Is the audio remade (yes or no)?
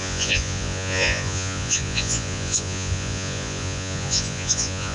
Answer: yes